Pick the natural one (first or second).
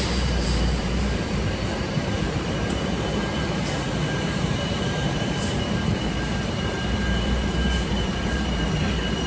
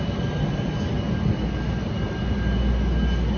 second